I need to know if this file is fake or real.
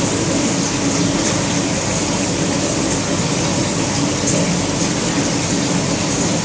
real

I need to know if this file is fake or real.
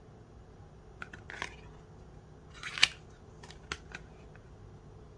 real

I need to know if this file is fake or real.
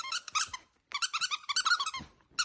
real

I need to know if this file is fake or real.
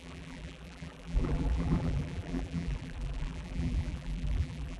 fake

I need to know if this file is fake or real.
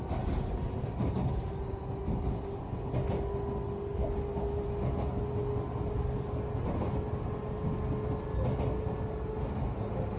real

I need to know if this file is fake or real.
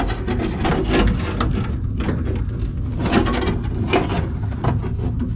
real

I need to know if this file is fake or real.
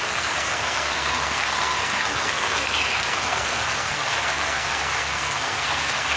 fake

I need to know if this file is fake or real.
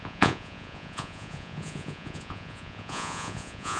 fake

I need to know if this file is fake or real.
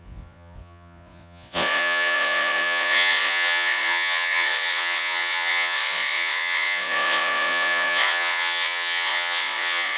fake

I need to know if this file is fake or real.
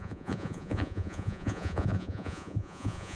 fake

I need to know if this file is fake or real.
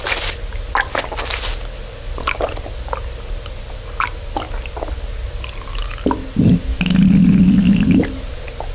real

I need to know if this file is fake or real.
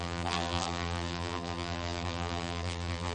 fake